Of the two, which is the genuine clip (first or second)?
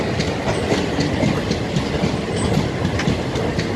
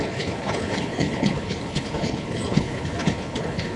first